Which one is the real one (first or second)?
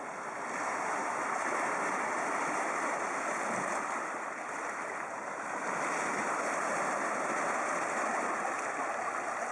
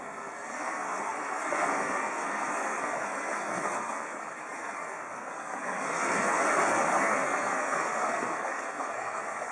first